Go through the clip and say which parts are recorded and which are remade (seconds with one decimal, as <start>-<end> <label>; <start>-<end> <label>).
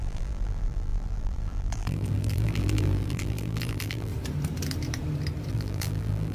0.0-4.1 remade; 4.1-5.5 recorded; 5.5-6.3 remade